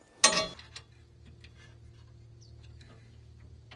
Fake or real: real